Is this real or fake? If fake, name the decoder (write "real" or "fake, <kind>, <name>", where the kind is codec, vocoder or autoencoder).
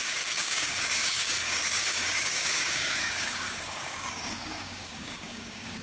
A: fake, codec, DAC